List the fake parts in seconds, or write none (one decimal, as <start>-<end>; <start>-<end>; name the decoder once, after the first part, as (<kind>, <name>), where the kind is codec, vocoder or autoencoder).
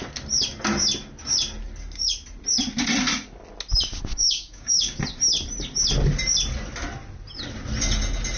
4.1-5.0 (codec, DAC)